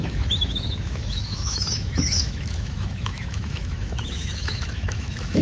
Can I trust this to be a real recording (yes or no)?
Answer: no